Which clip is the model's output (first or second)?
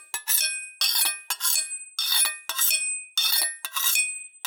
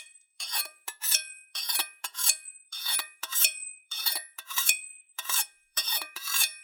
second